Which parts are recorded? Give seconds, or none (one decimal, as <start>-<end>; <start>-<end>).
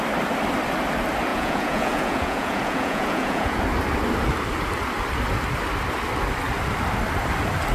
0.0-1.3; 3.6-7.7